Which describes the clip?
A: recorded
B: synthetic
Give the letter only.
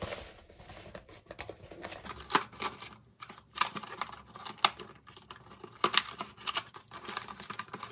A